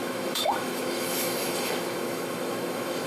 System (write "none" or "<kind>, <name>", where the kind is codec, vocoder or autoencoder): autoencoder, DAC-VAE